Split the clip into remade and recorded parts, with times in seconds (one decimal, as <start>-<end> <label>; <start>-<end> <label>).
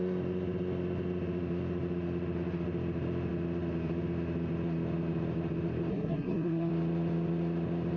0.0-5.9 recorded; 5.9-6.7 remade; 6.7-8.0 recorded